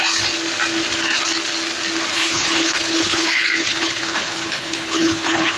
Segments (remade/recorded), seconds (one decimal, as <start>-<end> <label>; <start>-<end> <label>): 0.0-2.1 recorded; 2.1-5.6 remade